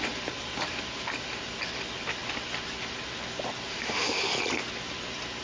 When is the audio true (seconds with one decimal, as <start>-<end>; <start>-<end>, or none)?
0.0-3.7; 4.4-5.4